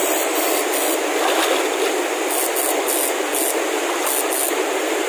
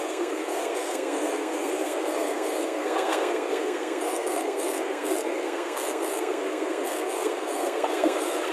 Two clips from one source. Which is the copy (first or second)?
second